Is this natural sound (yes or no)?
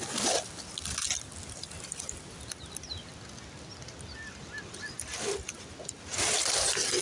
yes